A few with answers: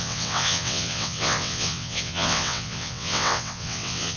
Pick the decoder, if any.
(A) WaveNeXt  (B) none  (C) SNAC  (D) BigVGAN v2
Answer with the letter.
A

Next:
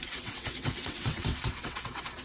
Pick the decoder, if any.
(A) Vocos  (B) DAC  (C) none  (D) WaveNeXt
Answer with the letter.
D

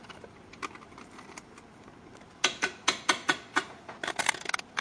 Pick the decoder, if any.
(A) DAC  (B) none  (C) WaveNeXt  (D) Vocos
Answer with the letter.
B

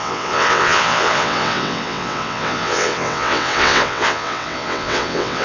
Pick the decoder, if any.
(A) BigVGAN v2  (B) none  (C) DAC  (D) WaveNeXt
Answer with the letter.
D